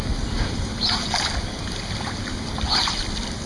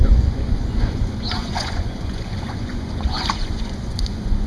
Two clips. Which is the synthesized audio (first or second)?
second